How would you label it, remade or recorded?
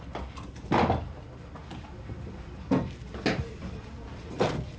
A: recorded